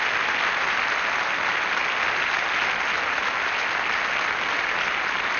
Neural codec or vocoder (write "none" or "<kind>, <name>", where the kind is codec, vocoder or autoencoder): none